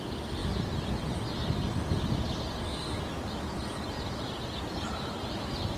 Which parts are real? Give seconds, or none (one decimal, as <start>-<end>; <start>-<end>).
0.0-5.8